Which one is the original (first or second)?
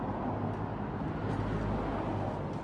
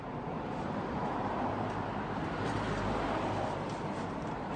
first